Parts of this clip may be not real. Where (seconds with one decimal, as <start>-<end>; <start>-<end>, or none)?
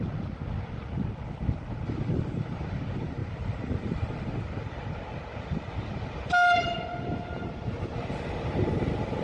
none